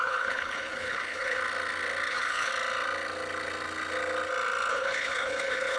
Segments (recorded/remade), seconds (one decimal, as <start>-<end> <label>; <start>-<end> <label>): 0.0-1.4 remade; 1.4-2.1 recorded; 2.1-2.5 remade; 2.5-4.7 recorded; 4.7-5.8 remade